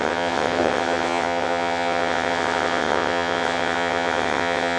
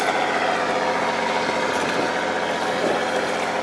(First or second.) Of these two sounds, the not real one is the first